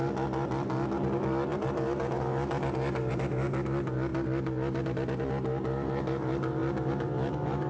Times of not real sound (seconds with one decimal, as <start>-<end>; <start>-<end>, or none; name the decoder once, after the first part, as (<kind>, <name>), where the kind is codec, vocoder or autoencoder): none